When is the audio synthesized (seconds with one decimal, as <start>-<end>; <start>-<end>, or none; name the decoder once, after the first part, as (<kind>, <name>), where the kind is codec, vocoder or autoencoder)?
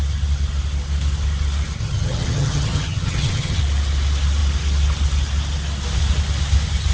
1.8-3.6 (vocoder, HiFi-GAN)